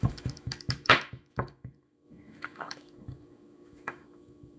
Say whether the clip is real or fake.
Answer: fake